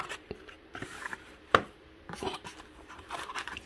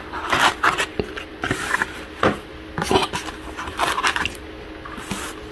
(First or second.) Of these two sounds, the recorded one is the second